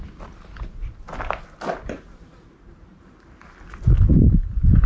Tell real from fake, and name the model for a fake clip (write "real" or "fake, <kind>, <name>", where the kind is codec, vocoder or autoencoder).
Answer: real